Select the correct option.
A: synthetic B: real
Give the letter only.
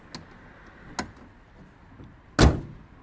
B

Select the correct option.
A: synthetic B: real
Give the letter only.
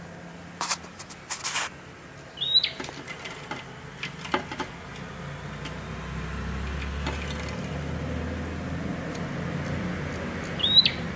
B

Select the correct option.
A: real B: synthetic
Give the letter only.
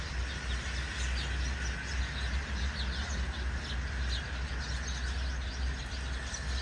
A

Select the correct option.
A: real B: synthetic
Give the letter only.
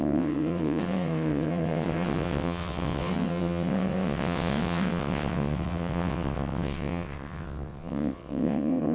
B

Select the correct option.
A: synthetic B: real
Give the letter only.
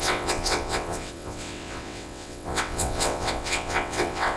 A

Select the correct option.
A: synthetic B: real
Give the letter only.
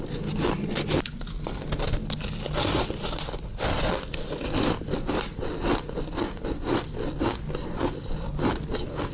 B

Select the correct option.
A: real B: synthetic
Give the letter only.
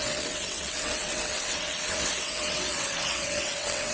B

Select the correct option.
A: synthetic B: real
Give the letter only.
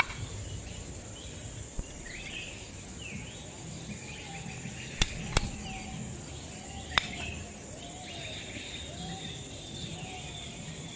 B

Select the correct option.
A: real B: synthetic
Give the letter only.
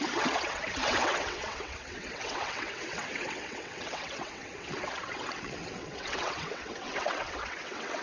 B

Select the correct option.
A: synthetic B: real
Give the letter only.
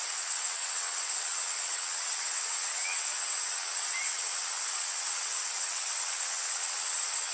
A